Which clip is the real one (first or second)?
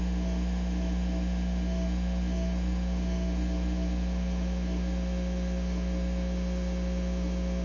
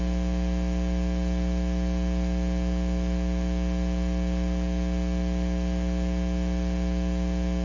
second